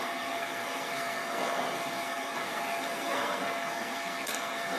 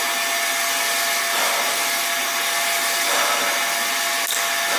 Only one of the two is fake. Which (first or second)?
first